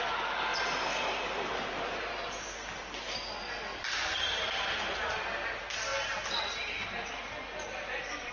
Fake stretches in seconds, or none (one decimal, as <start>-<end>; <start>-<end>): 0.5-1.6; 3.7-4.6